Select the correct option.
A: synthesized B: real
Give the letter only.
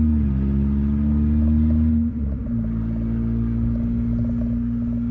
B